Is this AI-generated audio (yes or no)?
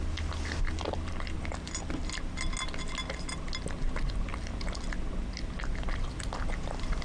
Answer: no